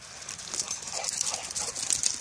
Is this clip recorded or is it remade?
recorded